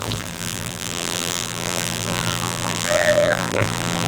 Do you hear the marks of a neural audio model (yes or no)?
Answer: yes